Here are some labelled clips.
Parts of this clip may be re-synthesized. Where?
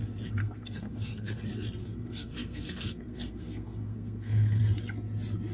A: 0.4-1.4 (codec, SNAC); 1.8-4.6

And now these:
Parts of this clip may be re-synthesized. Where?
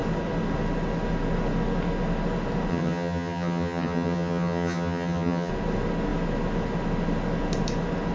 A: 2.7-5.5 (vocoder, HiFi-GAN)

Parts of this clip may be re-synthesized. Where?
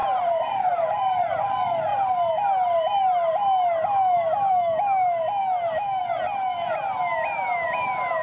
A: 0.0-1.4 (vocoder, BigVGAN v2)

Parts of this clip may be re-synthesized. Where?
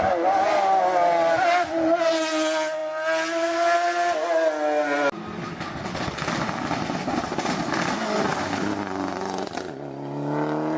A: none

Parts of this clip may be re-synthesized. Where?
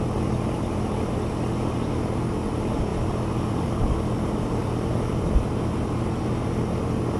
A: 2.9-3.8 (vocoder, BigVGAN v2); 4.6-5.5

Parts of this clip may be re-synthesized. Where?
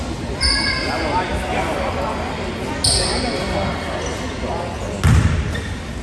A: none